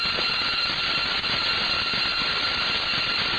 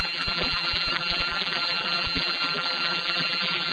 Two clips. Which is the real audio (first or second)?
first